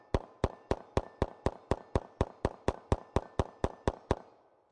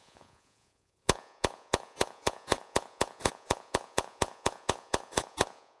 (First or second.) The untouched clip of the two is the first